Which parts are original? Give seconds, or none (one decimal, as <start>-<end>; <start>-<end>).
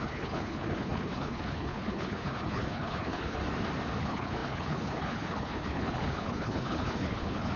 3.4-4.0